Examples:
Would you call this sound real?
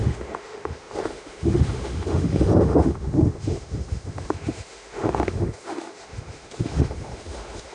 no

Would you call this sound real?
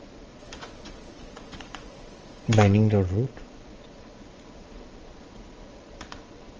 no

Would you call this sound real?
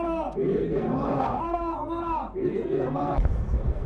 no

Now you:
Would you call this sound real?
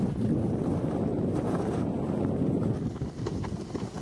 yes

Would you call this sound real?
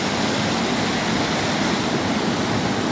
yes